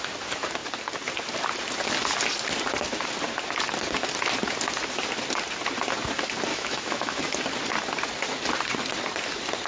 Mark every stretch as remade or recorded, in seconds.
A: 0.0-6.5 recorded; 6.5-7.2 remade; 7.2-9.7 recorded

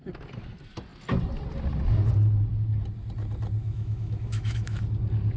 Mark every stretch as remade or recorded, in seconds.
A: 0.0-3.6 recorded; 3.6-4.8 remade; 4.8-5.4 recorded